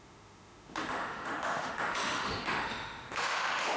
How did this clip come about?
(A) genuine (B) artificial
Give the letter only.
B